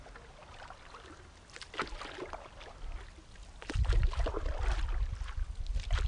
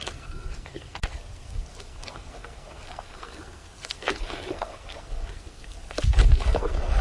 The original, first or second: first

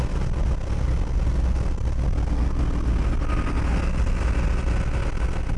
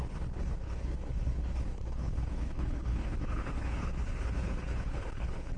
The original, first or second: first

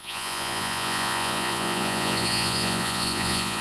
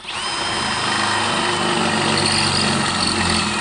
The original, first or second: second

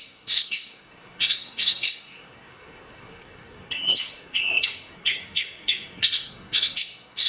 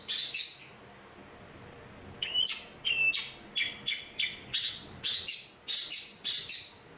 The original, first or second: second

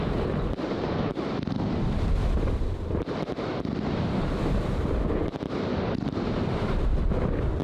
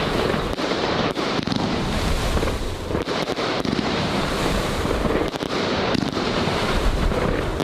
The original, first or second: first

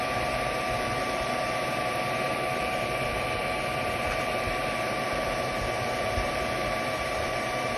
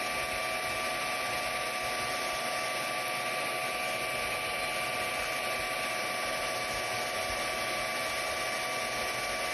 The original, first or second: second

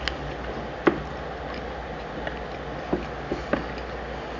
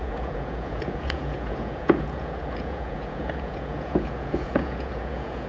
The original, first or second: first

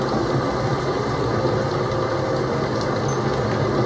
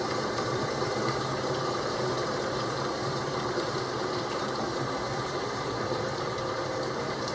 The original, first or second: first